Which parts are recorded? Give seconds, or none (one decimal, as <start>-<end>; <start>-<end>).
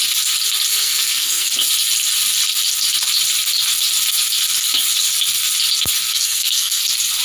0.0-0.7; 1.5-6.1; 6.8-7.2